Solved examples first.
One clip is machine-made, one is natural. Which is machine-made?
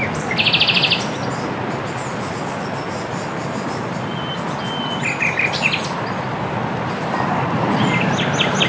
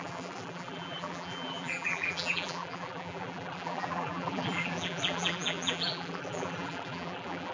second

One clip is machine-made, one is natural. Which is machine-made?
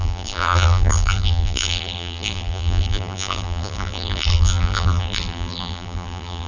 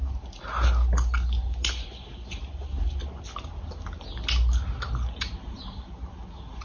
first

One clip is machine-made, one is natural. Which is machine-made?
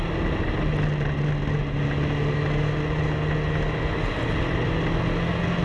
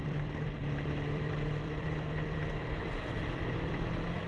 second